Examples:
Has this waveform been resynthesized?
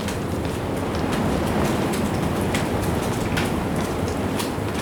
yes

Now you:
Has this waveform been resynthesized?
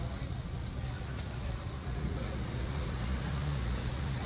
yes